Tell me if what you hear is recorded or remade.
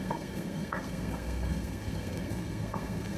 remade